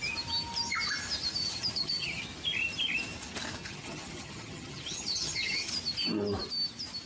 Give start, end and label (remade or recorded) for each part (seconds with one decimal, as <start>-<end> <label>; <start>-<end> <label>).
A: 0.0-1.4 recorded; 1.4-2.2 remade; 2.2-3.6 recorded; 3.6-5.7 remade; 5.7-7.1 recorded